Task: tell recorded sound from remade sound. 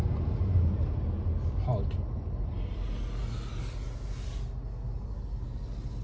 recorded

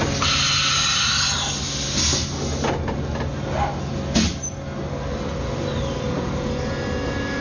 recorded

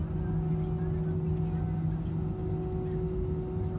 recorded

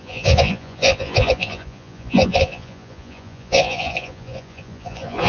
remade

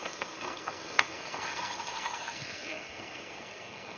remade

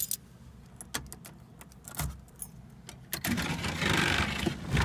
recorded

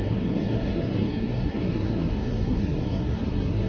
remade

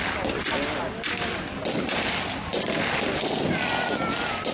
recorded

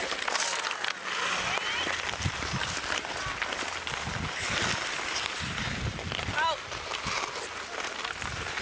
recorded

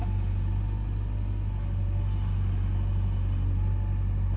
recorded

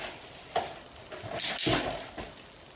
recorded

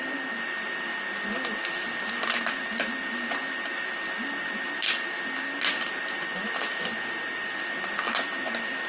recorded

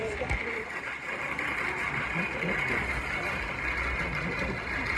recorded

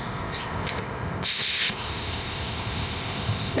remade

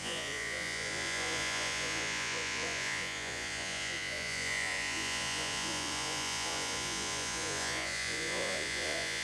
remade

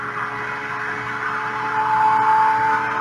recorded